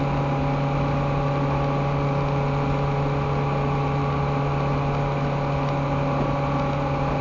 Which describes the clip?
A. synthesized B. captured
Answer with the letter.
B